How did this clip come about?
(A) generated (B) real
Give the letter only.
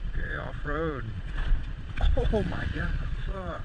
A